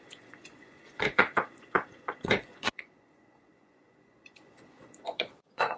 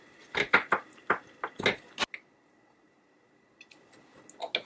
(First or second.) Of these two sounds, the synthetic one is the first